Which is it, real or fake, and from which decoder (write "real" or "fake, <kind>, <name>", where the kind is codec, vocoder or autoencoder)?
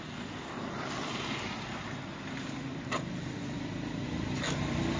real